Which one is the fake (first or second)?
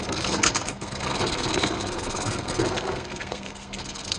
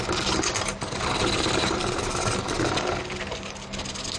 first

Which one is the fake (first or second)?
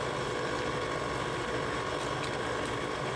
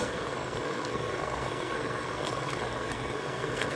second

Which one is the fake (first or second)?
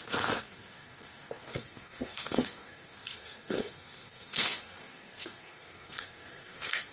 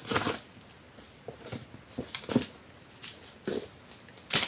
first